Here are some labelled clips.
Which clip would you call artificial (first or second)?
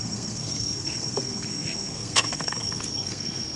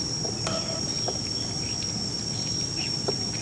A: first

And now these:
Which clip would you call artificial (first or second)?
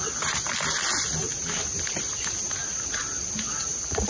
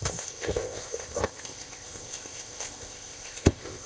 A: second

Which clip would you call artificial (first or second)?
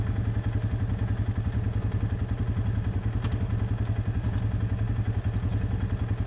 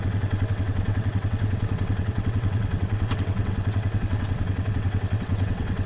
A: second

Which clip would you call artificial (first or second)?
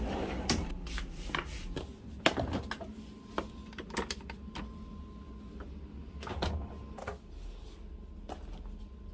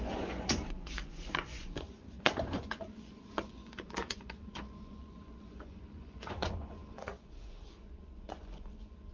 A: second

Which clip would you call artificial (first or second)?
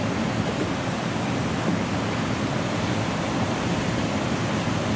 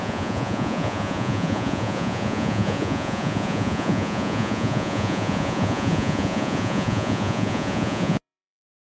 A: second